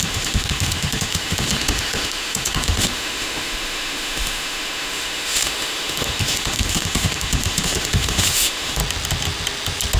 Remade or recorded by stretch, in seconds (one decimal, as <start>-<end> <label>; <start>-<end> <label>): 0.0-8.8 remade; 8.8-10.0 recorded